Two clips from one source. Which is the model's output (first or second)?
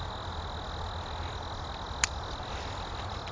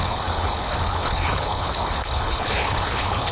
second